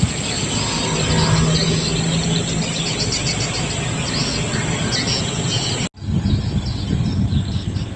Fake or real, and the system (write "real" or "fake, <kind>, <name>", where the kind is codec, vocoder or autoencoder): real